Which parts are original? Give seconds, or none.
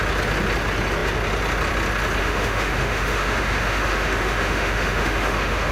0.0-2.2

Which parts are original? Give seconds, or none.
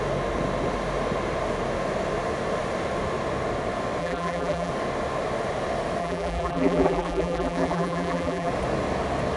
0.0-4.0; 4.7-6.0; 8.5-9.4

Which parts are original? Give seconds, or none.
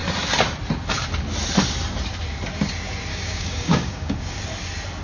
0.0-3.1; 4.4-5.0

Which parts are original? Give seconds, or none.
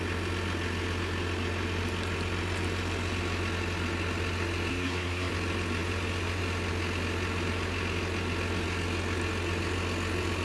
0.0-4.7; 5.3-10.4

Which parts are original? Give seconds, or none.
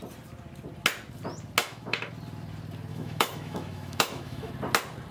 0.0-1.6; 2.1-2.9; 4.5-5.1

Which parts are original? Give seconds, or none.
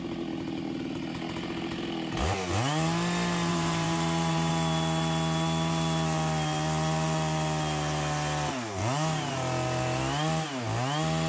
0.0-3.5; 4.5-11.3